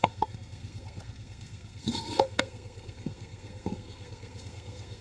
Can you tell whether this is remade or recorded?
remade